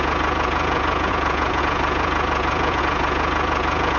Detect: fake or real fake